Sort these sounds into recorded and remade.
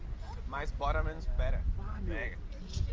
recorded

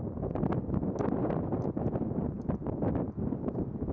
recorded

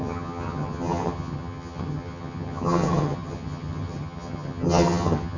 remade